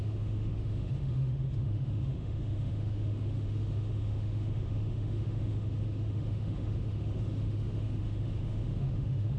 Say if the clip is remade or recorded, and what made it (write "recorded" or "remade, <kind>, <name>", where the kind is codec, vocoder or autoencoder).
remade, autoencoder, DAC-VAE